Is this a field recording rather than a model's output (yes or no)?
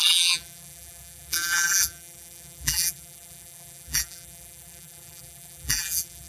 no